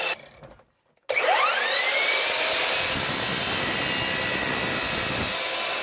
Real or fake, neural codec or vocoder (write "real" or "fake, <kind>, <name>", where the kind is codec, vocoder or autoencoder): real